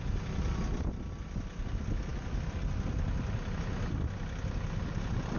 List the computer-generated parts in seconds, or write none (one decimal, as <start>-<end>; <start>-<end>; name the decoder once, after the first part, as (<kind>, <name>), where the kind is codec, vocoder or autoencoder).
none